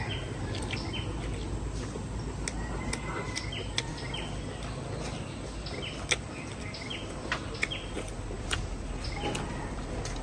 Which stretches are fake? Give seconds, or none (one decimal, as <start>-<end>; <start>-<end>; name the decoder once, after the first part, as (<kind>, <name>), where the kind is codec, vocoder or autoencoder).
none